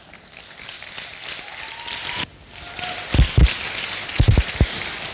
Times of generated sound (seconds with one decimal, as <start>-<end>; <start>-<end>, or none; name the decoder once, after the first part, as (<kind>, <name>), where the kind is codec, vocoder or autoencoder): none